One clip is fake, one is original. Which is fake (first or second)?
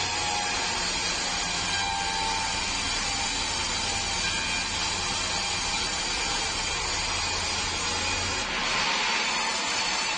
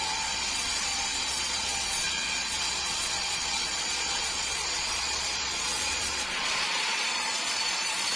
second